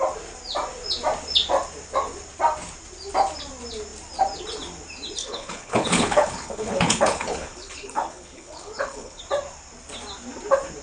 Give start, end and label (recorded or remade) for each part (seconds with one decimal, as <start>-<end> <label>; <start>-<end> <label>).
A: 0.0-5.2 recorded; 5.2-9.2 remade; 9.2-10.8 recorded